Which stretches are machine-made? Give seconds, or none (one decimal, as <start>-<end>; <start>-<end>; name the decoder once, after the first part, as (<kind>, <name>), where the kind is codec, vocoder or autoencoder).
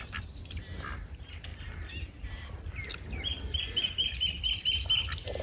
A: none